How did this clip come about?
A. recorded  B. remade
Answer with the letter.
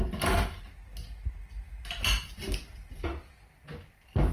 A